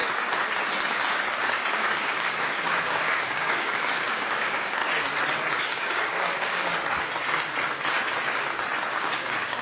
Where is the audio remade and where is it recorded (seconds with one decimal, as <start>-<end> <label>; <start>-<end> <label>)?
0.0-1.7 recorded; 1.7-4.8 remade; 4.8-5.6 recorded; 5.6-6.7 remade; 6.7-8.9 recorded; 8.9-9.6 remade